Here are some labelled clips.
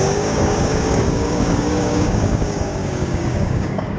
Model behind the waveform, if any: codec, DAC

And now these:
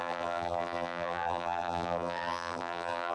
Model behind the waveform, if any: vocoder, BigVGAN v2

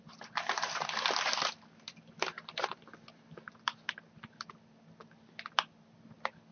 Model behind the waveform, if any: none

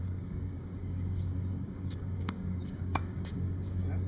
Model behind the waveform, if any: codec, DAC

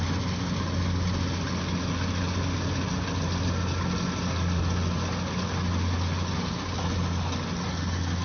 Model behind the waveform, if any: none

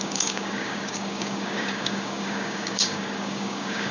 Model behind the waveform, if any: codec, DAC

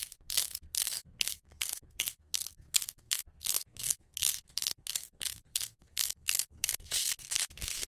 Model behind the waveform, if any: codec, SNAC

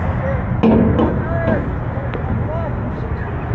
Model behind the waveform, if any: none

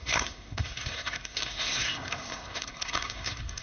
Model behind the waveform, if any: codec, SNAC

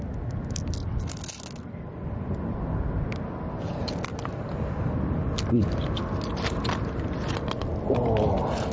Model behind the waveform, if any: none